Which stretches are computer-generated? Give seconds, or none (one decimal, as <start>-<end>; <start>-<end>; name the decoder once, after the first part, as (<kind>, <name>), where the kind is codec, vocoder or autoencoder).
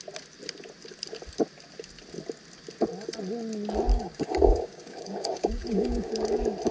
3.9-6.1 (codec, DAC)